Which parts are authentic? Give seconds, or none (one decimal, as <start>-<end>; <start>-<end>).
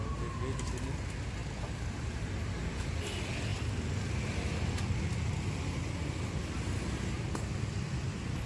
0.0-8.5